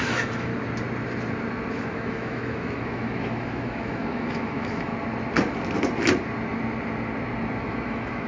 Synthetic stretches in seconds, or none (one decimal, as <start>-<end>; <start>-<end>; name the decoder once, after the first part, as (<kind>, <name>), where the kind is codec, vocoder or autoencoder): 0.0-0.5 (autoencoder, DAC-VAE); 1.7-4.9; 7.6-8.3